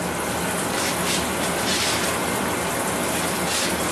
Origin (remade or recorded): recorded